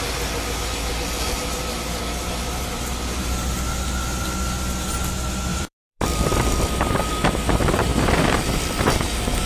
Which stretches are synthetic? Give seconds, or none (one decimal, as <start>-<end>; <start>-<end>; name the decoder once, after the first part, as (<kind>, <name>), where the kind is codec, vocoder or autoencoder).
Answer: 5.5-7.1 (vocoder, BigVGAN v2)